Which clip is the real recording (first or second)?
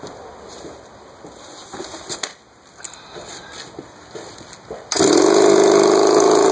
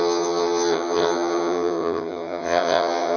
first